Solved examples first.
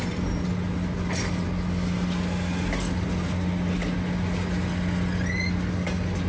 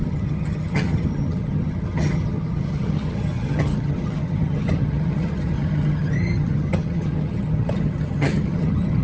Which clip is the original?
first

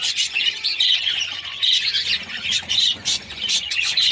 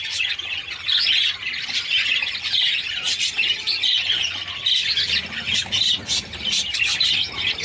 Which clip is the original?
second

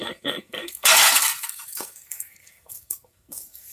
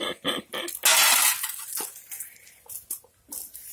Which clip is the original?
second